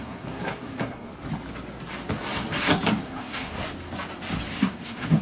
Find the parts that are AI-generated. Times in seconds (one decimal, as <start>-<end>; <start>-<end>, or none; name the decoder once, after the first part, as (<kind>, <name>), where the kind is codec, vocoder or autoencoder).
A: 0.0-1.1 (codec, SNAC); 3.0-3.6; 4.6-5.2